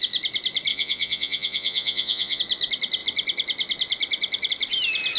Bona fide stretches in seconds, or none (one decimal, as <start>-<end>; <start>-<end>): 0.0-0.7; 2.4-5.2